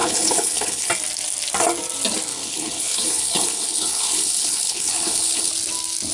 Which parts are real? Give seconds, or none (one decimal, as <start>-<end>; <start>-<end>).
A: 0.9-2.3; 5.5-6.1